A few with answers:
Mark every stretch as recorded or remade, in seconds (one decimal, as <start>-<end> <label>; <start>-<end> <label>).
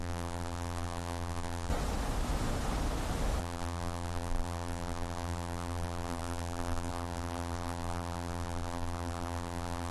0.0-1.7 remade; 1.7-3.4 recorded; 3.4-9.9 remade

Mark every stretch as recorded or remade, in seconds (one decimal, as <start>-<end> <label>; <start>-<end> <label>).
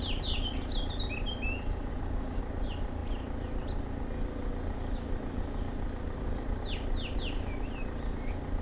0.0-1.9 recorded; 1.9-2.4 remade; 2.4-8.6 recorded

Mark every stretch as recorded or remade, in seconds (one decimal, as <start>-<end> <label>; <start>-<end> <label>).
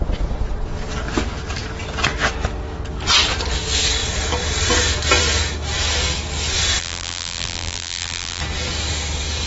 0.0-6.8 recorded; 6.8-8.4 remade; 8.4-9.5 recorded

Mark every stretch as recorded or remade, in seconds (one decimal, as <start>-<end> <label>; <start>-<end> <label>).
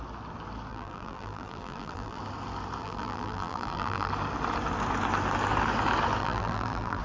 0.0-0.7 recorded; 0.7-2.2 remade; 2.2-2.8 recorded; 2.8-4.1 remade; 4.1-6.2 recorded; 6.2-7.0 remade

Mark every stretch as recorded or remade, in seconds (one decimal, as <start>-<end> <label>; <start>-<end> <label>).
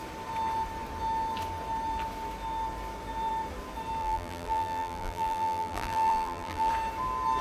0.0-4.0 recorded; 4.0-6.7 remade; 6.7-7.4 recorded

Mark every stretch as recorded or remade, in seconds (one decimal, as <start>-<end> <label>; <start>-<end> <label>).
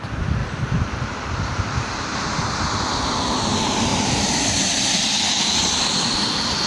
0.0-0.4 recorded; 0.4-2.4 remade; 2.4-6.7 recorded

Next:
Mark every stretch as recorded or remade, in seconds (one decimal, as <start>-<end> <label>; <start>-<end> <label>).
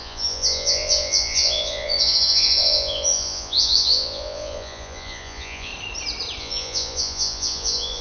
0.0-5.7 remade; 5.7-6.4 recorded; 6.4-8.0 remade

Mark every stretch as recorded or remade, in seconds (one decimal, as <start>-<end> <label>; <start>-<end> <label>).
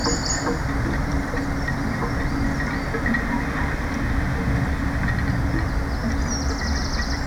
0.0-3.9 remade; 3.9-7.3 recorded